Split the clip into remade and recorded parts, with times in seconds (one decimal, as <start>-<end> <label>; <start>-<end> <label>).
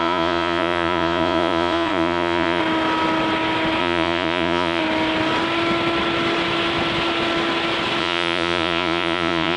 0.0-2.6 remade; 2.6-3.8 recorded; 3.8-4.8 remade; 4.8-8.0 recorded; 8.0-9.6 remade